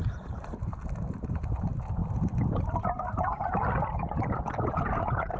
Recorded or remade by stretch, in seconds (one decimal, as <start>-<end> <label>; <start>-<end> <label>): 0.0-5.4 recorded